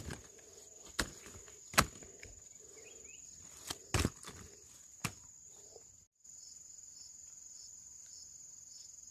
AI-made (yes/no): no